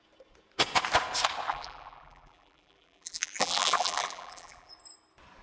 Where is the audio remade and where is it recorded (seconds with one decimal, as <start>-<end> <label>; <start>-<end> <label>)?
0.0-1.5 recorded; 1.5-4.7 remade; 4.7-5.4 recorded